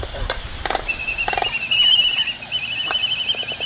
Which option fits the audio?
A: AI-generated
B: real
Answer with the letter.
A